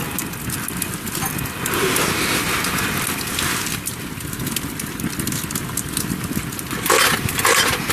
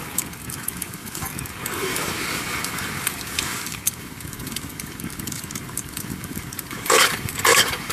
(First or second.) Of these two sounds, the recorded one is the first